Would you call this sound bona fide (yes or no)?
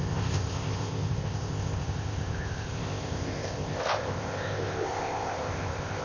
no